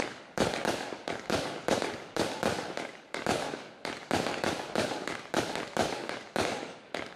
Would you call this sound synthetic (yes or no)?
yes